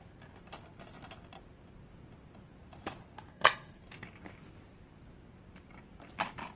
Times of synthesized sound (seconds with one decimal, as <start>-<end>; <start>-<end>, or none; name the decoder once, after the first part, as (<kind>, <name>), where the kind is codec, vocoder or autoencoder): 3.3-3.8 (codec, SNAC)